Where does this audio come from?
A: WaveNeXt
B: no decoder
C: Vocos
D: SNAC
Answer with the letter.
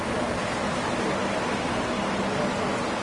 B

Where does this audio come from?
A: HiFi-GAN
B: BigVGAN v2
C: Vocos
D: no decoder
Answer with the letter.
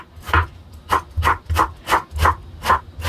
D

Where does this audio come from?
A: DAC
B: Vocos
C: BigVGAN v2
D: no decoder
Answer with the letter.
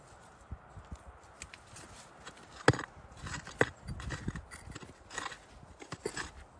D